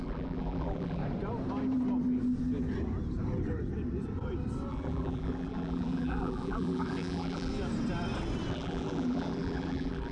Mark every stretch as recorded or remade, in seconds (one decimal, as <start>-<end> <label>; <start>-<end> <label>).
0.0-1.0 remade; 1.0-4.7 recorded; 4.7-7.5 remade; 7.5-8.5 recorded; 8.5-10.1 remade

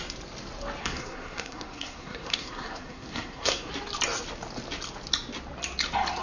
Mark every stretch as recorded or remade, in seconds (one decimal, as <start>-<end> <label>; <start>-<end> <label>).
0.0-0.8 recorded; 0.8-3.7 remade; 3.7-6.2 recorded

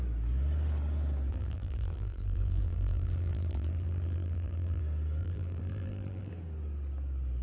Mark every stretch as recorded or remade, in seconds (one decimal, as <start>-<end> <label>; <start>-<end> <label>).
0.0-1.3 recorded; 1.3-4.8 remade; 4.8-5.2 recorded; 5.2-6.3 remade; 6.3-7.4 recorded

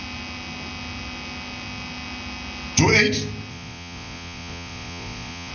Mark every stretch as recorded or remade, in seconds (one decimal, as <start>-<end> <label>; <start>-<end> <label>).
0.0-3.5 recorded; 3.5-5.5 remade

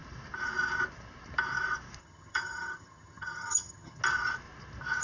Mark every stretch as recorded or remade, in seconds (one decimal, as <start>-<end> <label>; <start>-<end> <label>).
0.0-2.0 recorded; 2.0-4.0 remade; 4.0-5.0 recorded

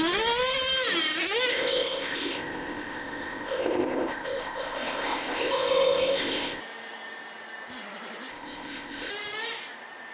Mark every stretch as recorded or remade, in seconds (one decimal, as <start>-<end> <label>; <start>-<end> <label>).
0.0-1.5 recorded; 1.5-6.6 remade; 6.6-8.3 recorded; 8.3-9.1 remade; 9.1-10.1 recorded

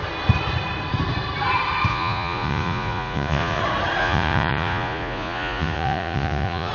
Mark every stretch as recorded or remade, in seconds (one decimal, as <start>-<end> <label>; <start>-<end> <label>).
0.0-1.9 recorded; 1.9-3.6 remade; 3.6-4.0 recorded; 4.0-6.7 remade

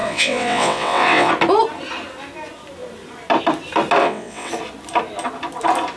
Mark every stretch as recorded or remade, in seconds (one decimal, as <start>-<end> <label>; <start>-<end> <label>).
0.0-1.3 remade; 1.3-4.0 recorded; 4.0-4.5 remade; 4.5-6.0 recorded